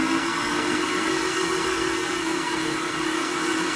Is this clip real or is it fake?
fake